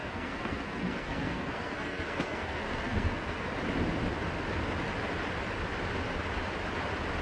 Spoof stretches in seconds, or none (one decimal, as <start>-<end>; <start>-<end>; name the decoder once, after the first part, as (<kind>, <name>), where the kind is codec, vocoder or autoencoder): 0.0-3.5 (codec, SNAC)